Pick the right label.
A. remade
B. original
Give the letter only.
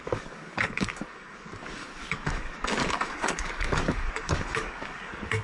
A